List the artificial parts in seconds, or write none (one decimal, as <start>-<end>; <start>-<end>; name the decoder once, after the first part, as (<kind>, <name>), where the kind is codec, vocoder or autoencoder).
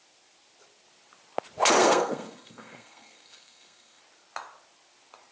1.8-4.0 (codec, SNAC)